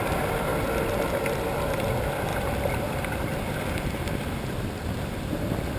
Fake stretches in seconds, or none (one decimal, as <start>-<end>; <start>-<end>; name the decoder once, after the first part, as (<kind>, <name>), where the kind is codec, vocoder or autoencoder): none